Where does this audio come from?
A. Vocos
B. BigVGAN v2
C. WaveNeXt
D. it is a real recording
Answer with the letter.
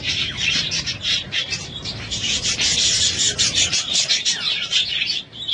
B